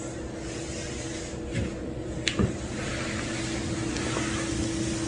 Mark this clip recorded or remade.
recorded